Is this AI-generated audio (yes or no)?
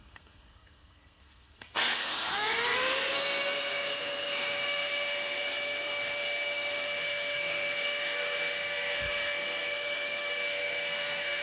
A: yes